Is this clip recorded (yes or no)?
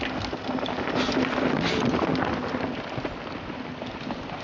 yes